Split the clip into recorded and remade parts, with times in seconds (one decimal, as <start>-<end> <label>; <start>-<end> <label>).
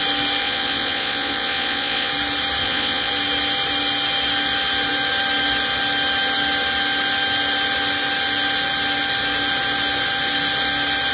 0.0-0.4 recorded; 0.4-2.1 remade; 2.1-2.6 recorded; 2.6-3.1 remade; 3.1-11.1 recorded